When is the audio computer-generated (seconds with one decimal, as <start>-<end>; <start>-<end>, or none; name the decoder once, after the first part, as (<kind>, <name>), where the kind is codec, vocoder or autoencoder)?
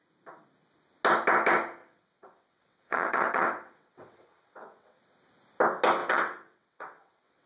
1.8-5.0 (vocoder, WaveNeXt); 6.0-7.5